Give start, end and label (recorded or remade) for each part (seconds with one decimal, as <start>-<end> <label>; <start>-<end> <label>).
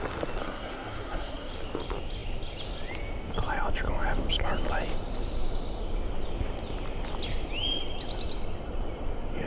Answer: 0.0-0.4 recorded; 0.4-1.5 remade; 1.5-9.5 recorded